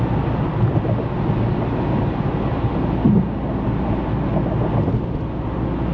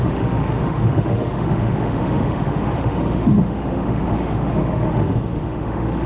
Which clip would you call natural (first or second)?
first